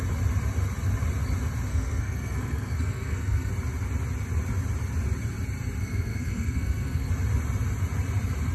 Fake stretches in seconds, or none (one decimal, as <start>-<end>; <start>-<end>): 1.7-3.5; 5.8-7.1